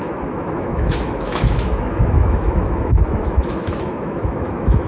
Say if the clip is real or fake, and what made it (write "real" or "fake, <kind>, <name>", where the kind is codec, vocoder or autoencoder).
fake, autoencoder, DAC-VAE